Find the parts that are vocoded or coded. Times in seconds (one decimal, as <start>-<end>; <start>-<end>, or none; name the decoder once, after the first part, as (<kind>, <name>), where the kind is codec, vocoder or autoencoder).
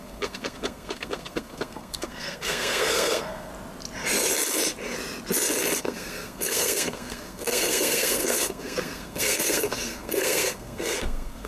0.0-3.5 (codec, SNAC); 5.8-11.5